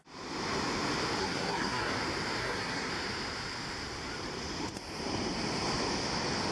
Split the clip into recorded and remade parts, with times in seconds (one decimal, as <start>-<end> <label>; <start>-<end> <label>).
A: 0.0-1.2 recorded; 1.2-2.0 remade; 2.0-2.4 recorded; 2.4-2.9 remade; 2.9-6.5 recorded